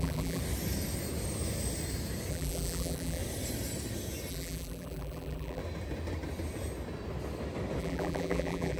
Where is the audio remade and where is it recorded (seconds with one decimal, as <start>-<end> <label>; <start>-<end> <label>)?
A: 0.0-0.4 remade; 0.4-2.3 recorded; 2.3-3.2 remade; 3.2-4.3 recorded; 4.3-5.6 remade; 5.6-7.8 recorded; 7.8-8.8 remade